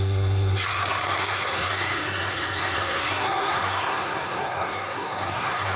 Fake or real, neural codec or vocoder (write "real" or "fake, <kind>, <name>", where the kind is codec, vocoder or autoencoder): fake, codec, SNAC